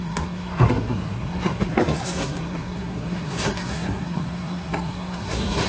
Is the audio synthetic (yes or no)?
yes